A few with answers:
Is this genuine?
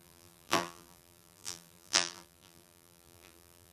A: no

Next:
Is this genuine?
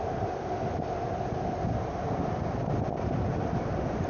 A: yes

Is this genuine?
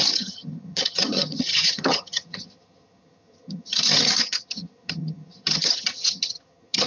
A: no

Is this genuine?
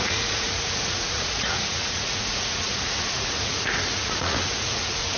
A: no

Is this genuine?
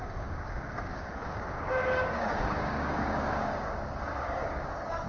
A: no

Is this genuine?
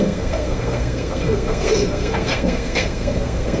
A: no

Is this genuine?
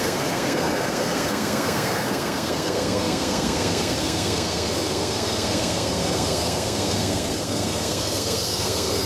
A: no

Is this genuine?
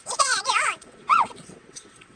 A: no